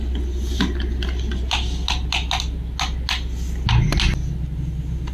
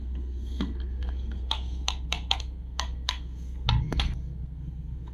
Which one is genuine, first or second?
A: first